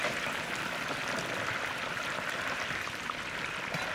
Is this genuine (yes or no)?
yes